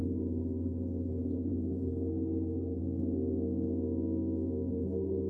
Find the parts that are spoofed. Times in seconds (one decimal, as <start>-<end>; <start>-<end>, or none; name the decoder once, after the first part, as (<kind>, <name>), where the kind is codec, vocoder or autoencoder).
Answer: 0.0-2.8 (codec, HILCodec); 4.7-5.3